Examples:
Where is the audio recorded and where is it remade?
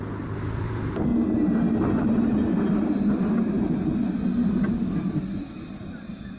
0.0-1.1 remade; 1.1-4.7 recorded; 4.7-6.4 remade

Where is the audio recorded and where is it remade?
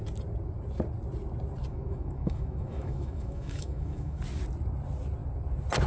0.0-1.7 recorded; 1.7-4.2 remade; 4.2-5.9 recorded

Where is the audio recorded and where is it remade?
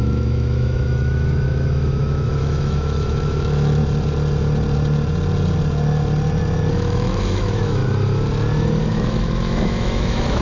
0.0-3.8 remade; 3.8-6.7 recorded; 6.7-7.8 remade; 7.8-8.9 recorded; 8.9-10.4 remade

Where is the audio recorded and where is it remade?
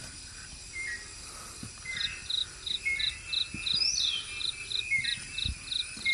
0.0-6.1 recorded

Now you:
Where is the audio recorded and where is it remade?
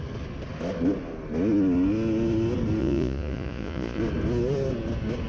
0.0-2.8 recorded; 2.8-4.0 remade; 4.0-5.3 recorded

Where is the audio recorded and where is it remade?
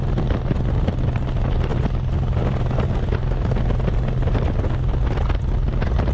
0.0-6.1 recorded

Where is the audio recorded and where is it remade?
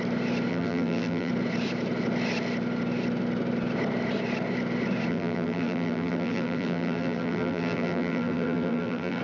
0.0-0.5 recorded; 0.5-1.3 remade; 1.3-5.1 recorded; 5.1-9.2 remade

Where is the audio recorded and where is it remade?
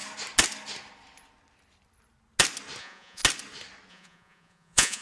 0.0-2.8 recorded; 2.8-3.2 remade; 3.2-3.9 recorded; 3.9-5.0 remade